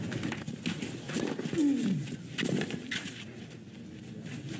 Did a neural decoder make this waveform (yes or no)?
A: no